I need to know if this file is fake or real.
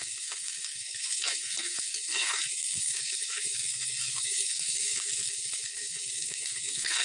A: fake